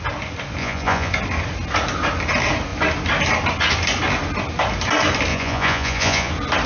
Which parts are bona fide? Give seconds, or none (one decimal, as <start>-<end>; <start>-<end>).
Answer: 0.0-0.6; 1.1-5.3; 6.3-6.7